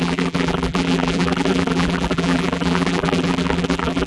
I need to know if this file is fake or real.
fake